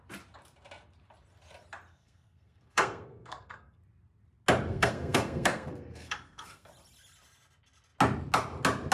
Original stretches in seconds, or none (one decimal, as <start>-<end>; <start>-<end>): 0.0-1.9; 3.8-4.7; 6.7-8.9